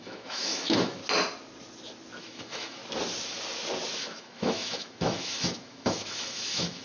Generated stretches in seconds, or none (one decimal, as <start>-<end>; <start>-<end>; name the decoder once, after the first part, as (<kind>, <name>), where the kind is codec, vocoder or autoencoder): 0.0-1.0 (autoencoder, DAC-VAE); 2.2-2.8; 4.0-6.8